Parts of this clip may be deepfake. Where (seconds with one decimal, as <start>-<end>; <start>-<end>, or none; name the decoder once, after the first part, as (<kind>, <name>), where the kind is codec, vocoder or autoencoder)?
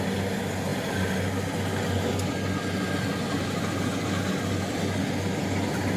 none